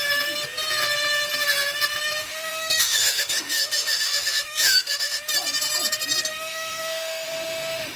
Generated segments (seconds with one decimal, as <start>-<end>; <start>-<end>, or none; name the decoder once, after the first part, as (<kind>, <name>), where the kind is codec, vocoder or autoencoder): 2.2-5.2 (autoencoder, DAC-VAE); 6.3-8.0